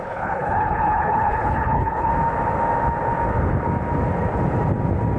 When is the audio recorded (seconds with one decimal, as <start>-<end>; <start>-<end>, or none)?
2.1-5.2